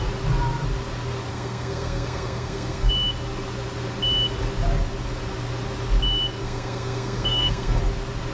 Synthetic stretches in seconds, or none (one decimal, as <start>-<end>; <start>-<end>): 1.3-2.9; 6.4-7.8